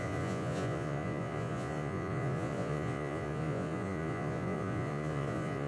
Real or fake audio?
fake